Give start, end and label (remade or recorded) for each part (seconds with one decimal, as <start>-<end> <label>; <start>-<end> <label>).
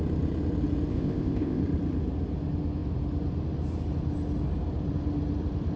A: 0.0-0.9 recorded; 0.9-1.6 remade; 1.6-5.8 recorded